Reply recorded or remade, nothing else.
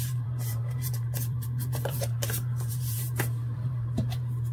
remade